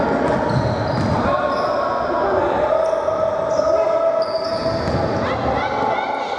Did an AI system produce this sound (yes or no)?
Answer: no